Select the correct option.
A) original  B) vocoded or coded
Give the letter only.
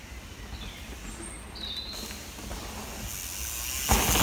A